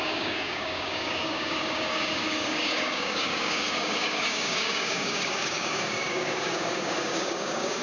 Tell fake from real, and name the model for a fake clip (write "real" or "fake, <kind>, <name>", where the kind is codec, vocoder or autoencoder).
fake, codec, DAC